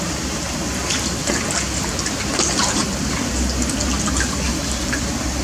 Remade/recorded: recorded